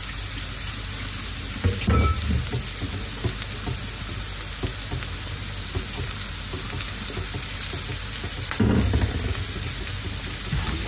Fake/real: real